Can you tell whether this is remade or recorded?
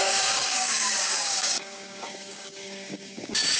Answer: remade